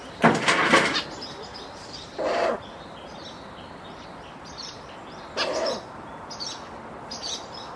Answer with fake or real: real